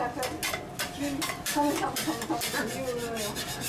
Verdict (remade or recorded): recorded